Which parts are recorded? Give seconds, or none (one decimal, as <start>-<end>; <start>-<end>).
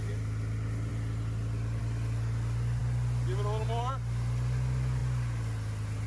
0.0-6.1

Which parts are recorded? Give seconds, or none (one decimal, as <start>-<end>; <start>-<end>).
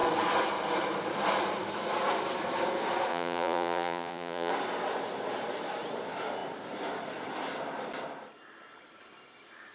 0.0-3.1; 4.5-9.7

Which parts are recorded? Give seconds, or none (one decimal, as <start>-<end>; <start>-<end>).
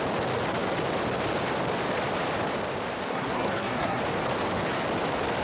0.0-3.1; 4.0-5.4